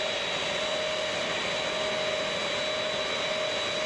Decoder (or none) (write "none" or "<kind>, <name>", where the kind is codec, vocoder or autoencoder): none